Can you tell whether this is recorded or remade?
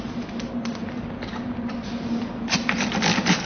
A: recorded